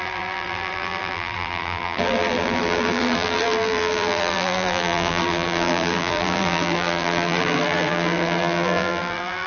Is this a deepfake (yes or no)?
yes